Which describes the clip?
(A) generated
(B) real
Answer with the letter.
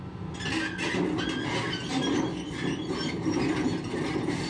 B